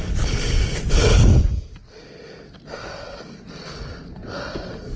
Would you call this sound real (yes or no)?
yes